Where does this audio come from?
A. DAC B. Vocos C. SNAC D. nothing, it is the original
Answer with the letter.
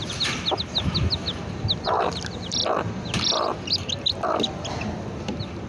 D